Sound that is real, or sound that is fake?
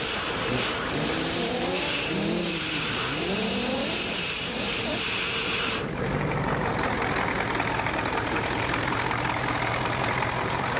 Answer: fake